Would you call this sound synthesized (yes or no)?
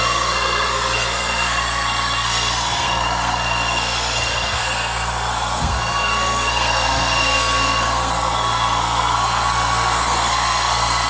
yes